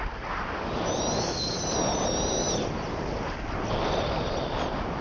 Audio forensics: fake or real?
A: real